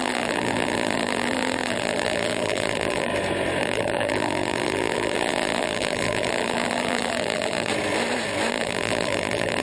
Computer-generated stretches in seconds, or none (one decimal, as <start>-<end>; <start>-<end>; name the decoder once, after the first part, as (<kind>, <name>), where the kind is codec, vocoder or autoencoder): 0.0-3.1 (vocoder, BigVGAN v2); 3.6-7.7; 8.5-9.6